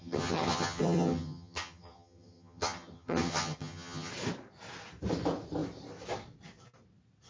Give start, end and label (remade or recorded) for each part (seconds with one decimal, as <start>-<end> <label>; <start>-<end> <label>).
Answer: 0.0-4.1 remade; 4.1-7.3 recorded